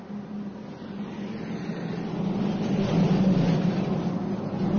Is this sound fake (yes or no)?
no